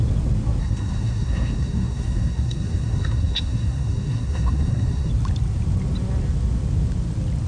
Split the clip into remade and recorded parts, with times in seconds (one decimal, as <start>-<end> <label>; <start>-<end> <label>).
0.0-0.6 recorded; 0.6-5.1 remade; 5.1-7.5 recorded